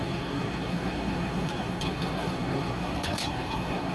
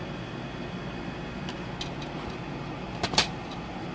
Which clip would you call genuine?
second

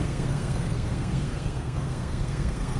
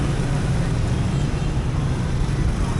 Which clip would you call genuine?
second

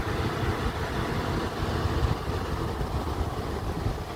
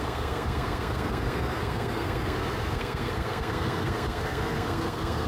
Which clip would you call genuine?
first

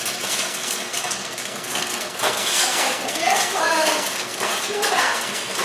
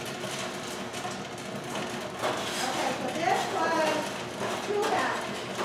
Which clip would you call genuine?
second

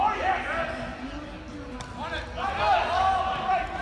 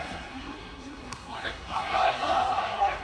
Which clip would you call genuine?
first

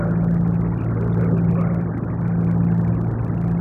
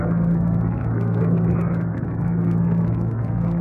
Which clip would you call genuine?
first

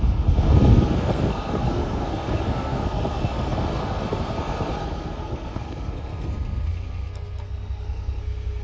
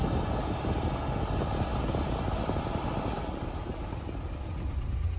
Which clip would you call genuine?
second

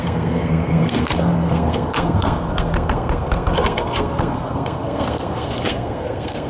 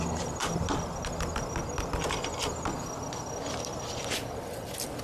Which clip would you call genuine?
second